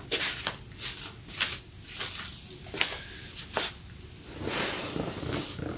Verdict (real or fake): real